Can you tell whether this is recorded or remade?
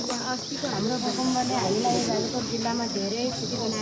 recorded